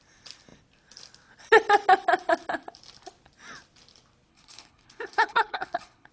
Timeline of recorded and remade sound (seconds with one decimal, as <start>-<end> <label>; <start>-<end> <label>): 0.0-4.3 recorded; 4.3-6.1 remade